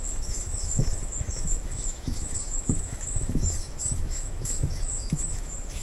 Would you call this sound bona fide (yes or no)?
no